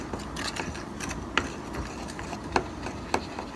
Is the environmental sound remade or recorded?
recorded